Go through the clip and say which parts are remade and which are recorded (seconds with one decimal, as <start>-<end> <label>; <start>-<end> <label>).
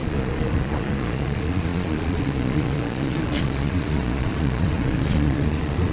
0.0-5.9 remade